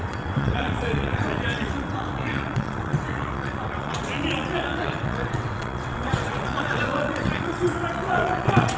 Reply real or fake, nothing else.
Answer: fake